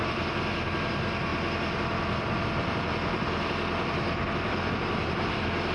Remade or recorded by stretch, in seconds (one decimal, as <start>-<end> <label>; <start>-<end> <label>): 0.0-5.7 remade